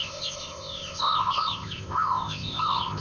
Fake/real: fake